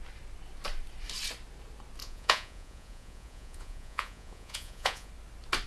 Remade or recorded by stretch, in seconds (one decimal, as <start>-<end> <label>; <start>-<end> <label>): 0.0-2.0 recorded; 2.0-5.1 remade; 5.1-5.7 recorded